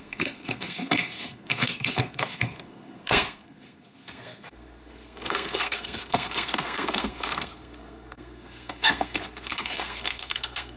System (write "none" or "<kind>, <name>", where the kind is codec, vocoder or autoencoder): codec, SNAC